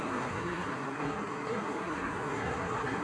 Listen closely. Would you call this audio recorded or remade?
remade